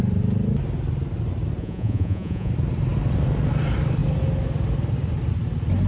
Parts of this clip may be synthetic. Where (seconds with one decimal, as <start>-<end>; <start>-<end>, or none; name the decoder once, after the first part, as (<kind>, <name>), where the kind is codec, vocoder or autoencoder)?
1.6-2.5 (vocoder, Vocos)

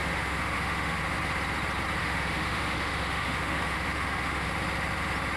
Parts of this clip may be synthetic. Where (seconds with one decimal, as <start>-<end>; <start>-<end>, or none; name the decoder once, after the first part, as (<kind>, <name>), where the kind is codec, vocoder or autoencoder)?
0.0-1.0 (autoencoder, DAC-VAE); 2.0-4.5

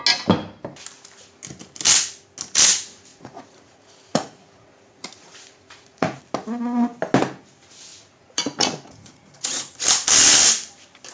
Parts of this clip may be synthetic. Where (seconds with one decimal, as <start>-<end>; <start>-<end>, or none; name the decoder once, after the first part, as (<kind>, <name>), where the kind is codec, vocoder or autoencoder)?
3.1-6.2 (vocoder, Vocos); 7.9-9.6

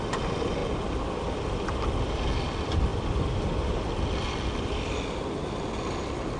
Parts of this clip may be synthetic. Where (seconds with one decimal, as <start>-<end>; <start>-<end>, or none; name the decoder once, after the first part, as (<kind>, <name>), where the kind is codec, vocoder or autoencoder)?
none

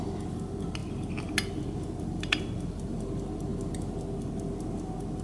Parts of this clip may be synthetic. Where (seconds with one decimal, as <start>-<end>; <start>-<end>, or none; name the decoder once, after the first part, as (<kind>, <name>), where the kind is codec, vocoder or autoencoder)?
none

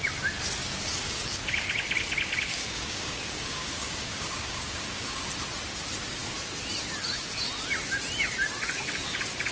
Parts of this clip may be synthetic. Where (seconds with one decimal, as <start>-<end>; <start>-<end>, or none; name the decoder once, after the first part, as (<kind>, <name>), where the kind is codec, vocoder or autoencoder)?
0.6-1.4 (codec, DAC); 2.5-5.3